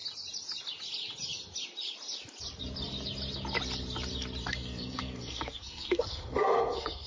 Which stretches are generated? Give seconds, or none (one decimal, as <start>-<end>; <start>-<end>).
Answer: 4.4-7.1